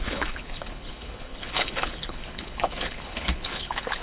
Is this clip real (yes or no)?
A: no